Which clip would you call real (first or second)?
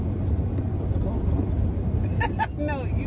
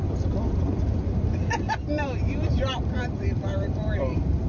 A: first